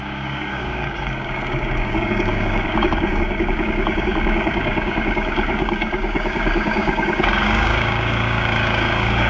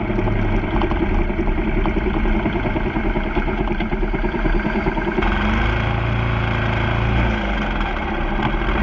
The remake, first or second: first